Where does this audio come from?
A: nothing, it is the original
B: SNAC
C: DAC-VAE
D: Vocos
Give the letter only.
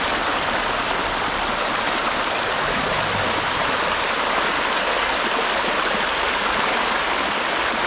A